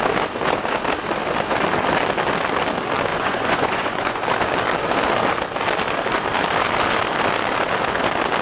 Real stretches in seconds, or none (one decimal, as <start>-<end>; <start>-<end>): 0.0-3.1; 4.2-8.4